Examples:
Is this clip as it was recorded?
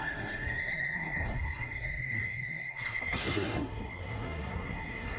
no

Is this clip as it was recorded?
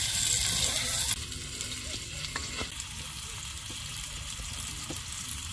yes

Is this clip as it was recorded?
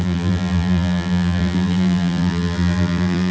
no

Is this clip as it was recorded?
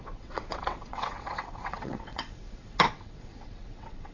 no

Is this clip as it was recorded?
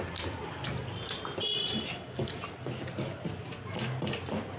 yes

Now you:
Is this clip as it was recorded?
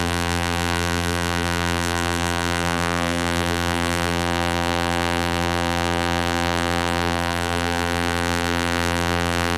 no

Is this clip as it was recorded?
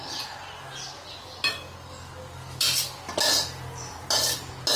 yes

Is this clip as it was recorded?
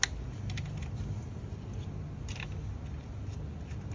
yes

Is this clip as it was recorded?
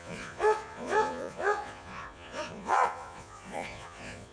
no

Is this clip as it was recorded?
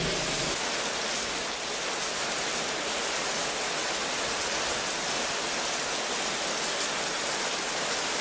yes